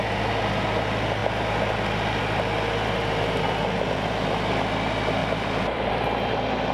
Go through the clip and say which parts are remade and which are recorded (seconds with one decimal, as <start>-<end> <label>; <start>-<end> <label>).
0.0-1.2 recorded; 1.2-2.2 remade; 2.2-5.2 recorded; 5.2-5.9 remade; 5.9-6.7 recorded